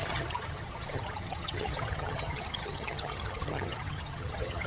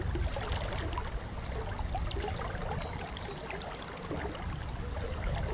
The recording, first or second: second